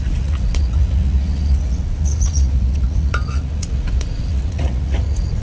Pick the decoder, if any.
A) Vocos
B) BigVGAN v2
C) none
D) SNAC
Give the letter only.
A